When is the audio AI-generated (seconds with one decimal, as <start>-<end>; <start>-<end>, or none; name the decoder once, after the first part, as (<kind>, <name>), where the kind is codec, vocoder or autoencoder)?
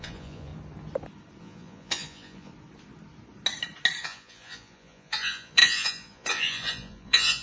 0.0-0.5 (vocoder, Vocos); 1.4-2.5; 4.0-7.4